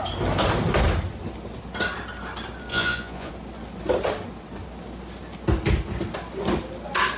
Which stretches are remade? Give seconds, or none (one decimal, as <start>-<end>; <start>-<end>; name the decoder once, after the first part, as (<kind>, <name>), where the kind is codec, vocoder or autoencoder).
2.7-3.3 (vocoder, Vocos)